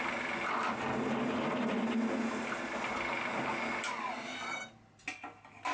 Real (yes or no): yes